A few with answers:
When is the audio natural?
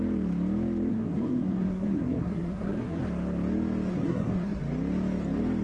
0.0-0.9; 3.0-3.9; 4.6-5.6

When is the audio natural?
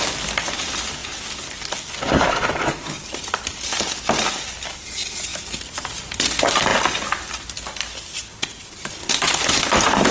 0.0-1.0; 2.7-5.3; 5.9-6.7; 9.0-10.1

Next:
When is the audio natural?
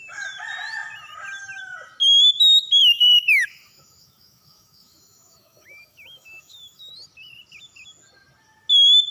0.0-2.8; 6.9-9.1